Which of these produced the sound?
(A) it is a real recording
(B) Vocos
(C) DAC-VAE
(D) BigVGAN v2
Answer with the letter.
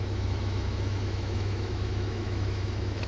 C